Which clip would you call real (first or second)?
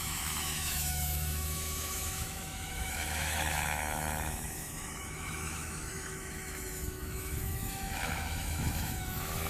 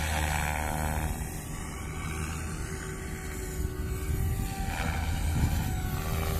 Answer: second